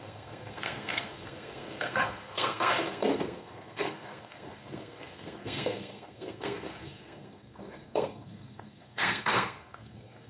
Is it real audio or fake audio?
fake